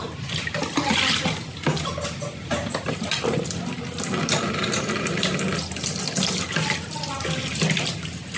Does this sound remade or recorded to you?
recorded